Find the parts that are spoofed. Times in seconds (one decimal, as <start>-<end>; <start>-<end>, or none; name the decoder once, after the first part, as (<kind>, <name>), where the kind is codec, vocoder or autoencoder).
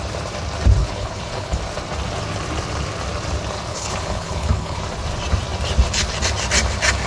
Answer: 0.8-1.6 (codec, HILCodec); 3.7-4.8